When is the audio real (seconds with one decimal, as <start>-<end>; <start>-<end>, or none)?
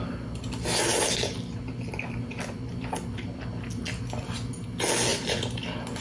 0.0-6.0